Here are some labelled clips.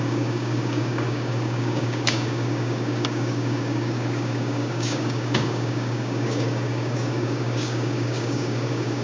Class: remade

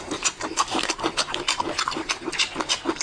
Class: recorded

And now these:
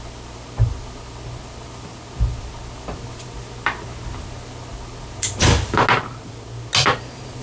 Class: recorded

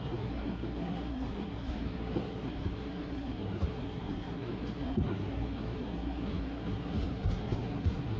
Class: remade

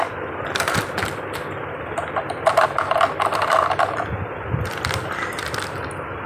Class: recorded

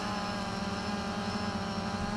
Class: recorded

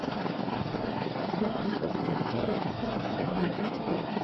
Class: remade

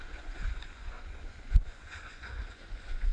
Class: remade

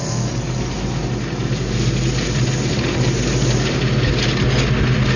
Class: recorded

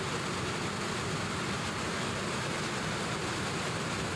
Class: recorded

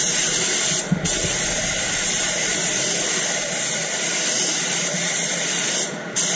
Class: remade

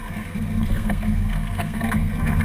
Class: remade